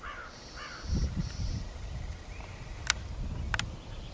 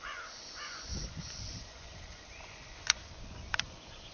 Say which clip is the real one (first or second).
first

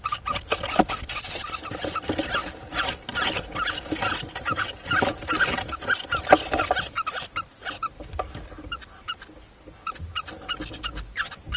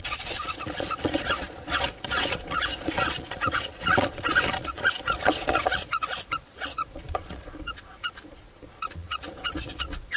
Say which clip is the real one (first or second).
first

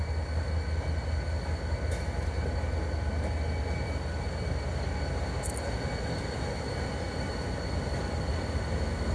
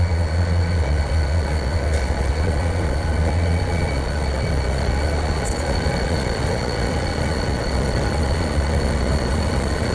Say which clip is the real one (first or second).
first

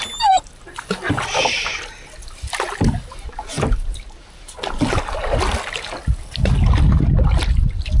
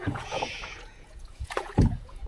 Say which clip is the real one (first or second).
first